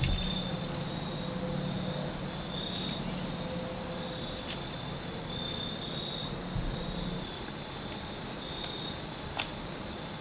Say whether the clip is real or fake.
real